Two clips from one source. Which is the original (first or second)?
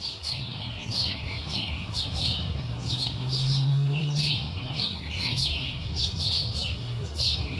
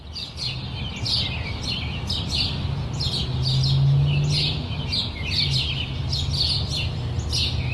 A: second